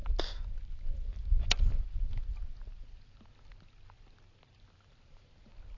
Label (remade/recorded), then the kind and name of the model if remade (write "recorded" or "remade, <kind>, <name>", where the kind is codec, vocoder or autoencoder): recorded